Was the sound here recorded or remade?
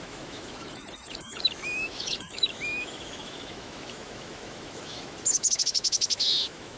remade